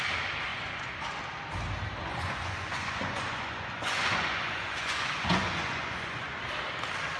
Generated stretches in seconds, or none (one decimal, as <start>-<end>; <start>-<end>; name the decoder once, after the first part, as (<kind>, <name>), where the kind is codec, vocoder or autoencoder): 0.5-1.2 (vocoder, Vocos); 2.1-6.4